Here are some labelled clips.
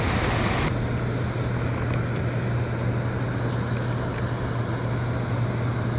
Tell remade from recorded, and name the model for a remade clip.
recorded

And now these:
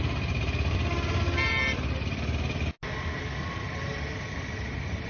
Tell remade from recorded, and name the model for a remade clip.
recorded